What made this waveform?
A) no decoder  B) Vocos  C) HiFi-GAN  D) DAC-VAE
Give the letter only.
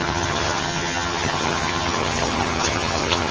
C